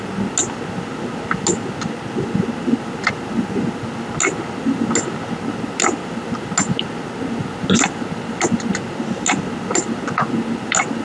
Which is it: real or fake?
real